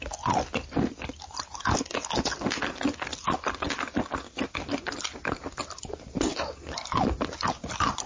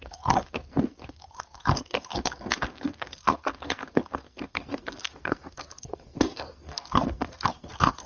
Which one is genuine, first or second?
first